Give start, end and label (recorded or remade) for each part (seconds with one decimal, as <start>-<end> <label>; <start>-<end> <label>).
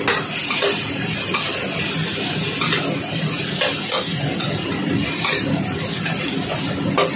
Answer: 0.0-7.2 recorded